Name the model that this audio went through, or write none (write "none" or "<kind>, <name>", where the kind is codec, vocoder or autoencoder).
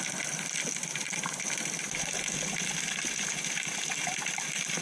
vocoder, BigVGAN v2